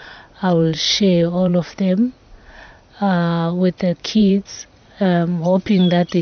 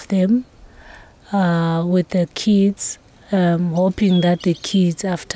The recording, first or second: second